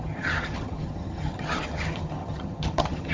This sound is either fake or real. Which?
fake